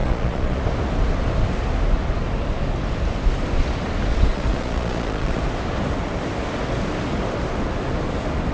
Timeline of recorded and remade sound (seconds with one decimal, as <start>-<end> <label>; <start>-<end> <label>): 0.0-0.6 remade; 0.6-4.1 recorded; 4.1-5.4 remade; 5.4-8.5 recorded